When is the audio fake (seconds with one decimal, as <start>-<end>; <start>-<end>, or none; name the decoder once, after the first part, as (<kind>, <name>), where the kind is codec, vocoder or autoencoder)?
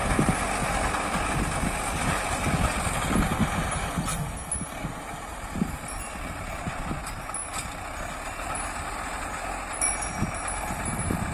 none